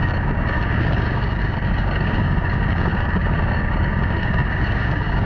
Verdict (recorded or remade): remade